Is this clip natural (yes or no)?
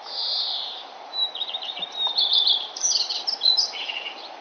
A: no